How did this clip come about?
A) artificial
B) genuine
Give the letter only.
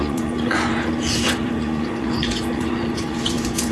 A